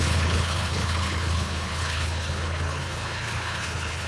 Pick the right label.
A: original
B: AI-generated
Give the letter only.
B